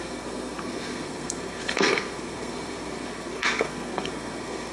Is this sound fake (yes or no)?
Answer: yes